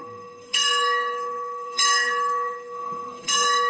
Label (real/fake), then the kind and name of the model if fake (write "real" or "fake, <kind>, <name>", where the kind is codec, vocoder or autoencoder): fake, codec, SNAC